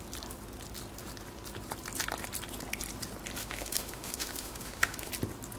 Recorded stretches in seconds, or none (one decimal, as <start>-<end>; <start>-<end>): 0.0-3.4; 5.1-5.6